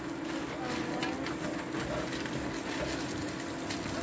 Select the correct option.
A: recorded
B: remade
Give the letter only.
A